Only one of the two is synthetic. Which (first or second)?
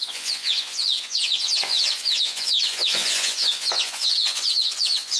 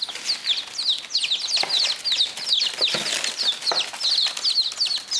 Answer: first